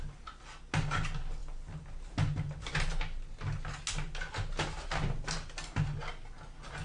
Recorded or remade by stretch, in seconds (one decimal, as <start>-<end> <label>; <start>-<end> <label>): 0.0-6.8 recorded